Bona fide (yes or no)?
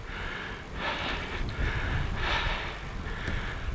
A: yes